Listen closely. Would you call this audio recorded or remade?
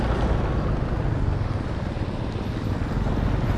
recorded